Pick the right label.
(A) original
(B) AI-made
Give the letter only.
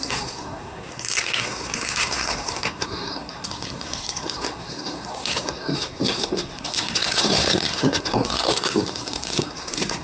B